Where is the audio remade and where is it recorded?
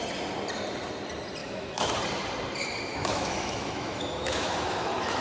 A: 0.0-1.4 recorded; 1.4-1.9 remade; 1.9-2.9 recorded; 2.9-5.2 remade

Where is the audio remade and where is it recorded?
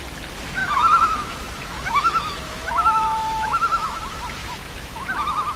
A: 0.0-0.6 recorded; 0.6-4.0 remade; 4.0-4.4 recorded; 4.4-5.0 remade; 5.0-5.6 recorded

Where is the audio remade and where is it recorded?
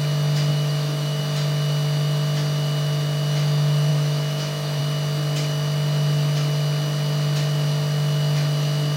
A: 0.0-0.5 recorded; 0.5-1.2 remade; 1.2-3.9 recorded; 3.9-4.8 remade; 4.8-9.0 recorded